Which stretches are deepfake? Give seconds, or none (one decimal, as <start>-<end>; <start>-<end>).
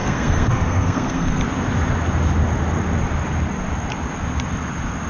0.0-1.4